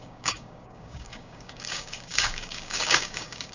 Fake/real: fake